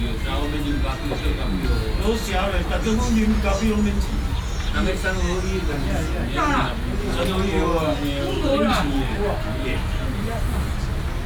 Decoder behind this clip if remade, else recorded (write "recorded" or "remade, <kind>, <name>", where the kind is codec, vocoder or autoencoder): recorded